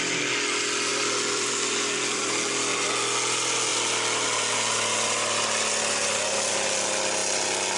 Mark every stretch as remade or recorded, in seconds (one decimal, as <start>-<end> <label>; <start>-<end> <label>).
0.0-0.9 recorded; 0.9-2.5 remade; 2.5-7.8 recorded